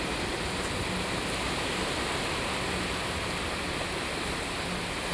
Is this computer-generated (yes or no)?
no